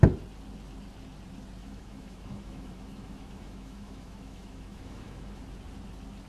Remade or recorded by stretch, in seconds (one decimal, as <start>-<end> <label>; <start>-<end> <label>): 0.0-1.6 recorded; 1.6-5.4 remade; 5.4-6.3 recorded